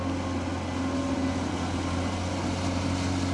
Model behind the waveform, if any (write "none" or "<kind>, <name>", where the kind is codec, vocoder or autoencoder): none